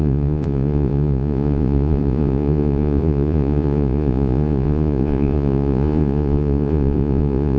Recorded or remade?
remade